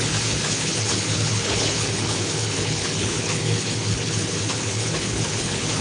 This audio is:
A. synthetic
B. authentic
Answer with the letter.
A